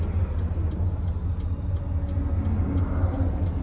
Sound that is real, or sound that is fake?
real